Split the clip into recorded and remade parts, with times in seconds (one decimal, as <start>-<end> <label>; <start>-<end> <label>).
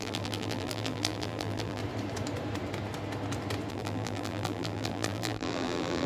0.0-1.8 remade; 1.8-3.7 recorded; 3.7-6.1 remade